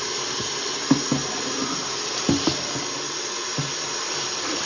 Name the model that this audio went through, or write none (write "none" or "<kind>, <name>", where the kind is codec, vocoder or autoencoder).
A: none